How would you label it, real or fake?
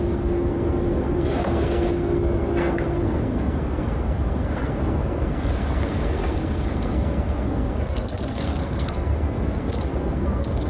fake